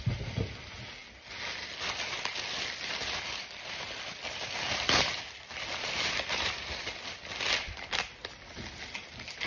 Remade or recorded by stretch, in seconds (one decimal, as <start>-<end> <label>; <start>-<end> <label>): 0.0-9.5 recorded